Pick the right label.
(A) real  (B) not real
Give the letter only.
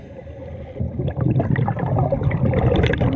A